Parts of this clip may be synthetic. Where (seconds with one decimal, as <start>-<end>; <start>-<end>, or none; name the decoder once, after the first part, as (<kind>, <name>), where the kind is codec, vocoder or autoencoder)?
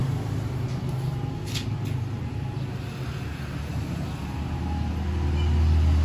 none